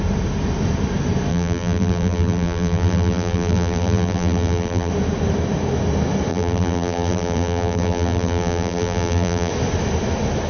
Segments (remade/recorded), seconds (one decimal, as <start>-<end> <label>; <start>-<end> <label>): 0.0-1.3 recorded; 1.3-4.9 remade; 4.9-6.3 recorded; 6.3-9.5 remade; 9.5-10.5 recorded